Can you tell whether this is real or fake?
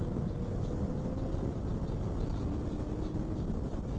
real